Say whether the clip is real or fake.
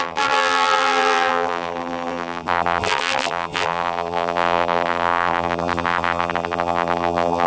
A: fake